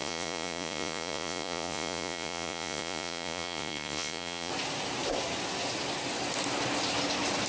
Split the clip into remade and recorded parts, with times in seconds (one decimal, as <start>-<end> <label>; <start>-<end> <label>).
0.0-4.5 remade; 4.5-7.5 recorded